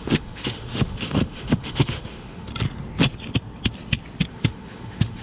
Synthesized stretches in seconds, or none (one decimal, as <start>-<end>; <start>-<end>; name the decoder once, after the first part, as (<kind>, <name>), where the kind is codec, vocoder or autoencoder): 0.0-2.5 (autoencoder, DAC-VAE); 4.3-5.2

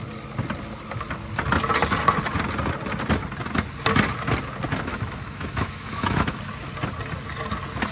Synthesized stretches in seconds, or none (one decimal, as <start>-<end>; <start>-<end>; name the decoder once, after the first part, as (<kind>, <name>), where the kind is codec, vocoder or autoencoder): 4.9-6.4 (autoencoder, DAC-VAE)

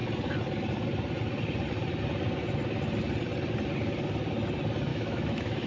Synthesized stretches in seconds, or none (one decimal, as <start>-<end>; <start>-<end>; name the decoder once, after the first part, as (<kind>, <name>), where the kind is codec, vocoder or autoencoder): 4.9-5.7 (autoencoder, DAC-VAE)

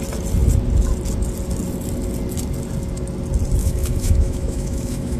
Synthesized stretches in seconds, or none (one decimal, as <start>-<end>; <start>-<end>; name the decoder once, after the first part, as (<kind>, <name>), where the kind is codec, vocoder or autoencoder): 3.6-5.2 (autoencoder, DAC-VAE)

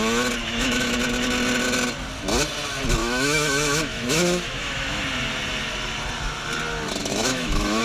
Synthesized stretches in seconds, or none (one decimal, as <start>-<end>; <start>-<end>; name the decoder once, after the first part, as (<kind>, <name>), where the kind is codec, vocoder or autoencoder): 0.4-1.0 (autoencoder, DAC-VAE); 3.0-5.0; 7.0-7.8

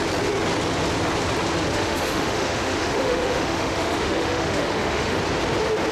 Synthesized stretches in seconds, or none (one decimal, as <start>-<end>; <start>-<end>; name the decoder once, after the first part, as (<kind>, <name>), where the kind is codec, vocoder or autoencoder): 1.7-5.2 (autoencoder, DAC-VAE)

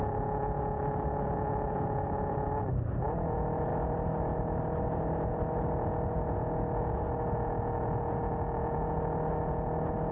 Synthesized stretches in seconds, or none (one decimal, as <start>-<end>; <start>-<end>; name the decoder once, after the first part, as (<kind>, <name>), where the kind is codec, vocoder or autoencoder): none

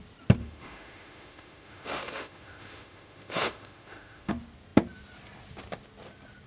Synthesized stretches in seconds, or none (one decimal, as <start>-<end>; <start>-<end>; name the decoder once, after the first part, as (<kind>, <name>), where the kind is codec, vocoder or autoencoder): 0.4-4.3 (autoencoder, DAC-VAE)